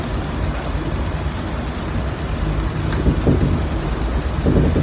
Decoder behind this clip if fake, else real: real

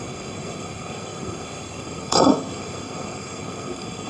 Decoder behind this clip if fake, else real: fake, codec, SNAC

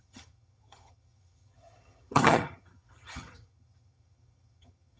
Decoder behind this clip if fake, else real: fake, vocoder, HiFi-GAN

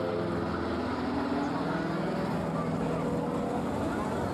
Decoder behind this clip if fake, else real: real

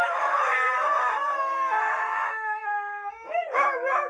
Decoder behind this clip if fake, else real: fake, autoencoder, DAC-VAE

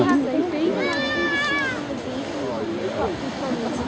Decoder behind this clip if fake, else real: real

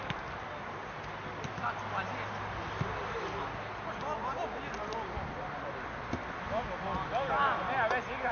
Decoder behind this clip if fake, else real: real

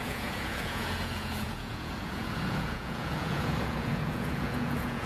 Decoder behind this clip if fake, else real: fake, vocoder, Vocos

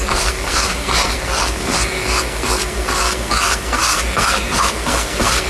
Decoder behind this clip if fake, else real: fake, codec, SNAC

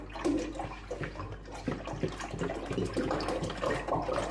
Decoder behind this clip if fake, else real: real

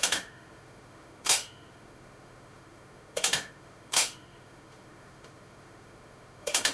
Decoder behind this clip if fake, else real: fake, autoencoder, DAC-VAE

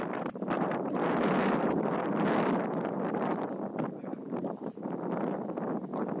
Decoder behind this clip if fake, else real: real